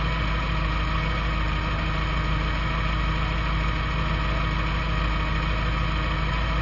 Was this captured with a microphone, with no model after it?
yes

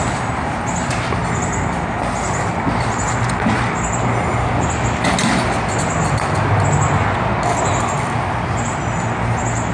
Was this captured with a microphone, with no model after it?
yes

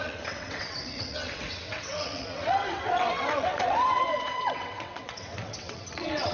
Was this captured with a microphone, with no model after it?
no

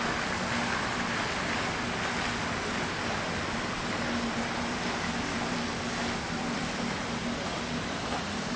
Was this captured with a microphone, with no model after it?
yes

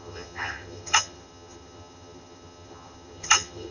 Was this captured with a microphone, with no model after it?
no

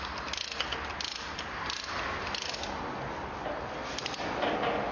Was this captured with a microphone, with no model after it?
yes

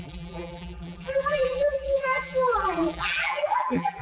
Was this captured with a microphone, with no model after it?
no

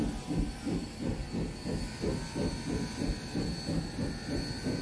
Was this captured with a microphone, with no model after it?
yes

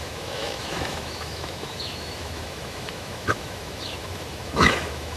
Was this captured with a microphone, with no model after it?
no